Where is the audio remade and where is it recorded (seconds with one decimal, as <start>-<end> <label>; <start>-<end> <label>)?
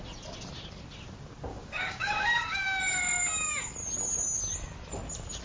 0.0-1.5 recorded; 1.5-2.8 remade; 2.8-5.4 recorded